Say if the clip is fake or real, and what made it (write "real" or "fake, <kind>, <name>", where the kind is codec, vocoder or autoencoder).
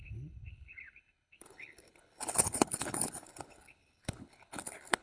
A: fake, codec, HILCodec